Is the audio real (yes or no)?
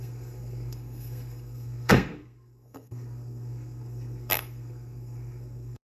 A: no